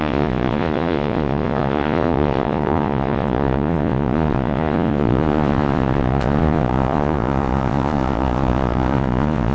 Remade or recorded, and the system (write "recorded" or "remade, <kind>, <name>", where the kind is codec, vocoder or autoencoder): remade, vocoder, Vocos